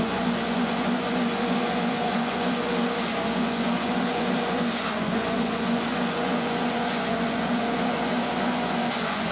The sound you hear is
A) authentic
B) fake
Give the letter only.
B